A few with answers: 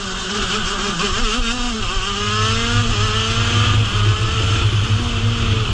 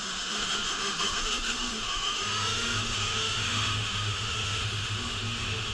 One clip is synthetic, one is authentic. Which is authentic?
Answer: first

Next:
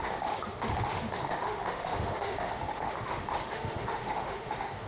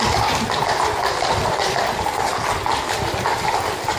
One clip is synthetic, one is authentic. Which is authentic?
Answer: second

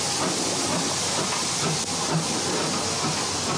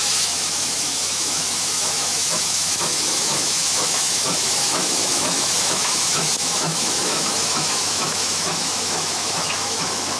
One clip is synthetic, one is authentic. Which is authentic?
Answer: first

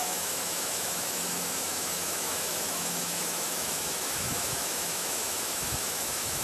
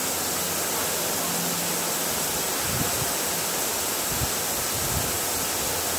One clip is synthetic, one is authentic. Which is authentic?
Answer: second